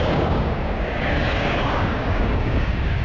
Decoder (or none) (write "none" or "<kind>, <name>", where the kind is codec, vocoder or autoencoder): codec, DAC